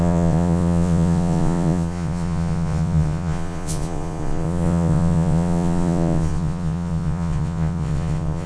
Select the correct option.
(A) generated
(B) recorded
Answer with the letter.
A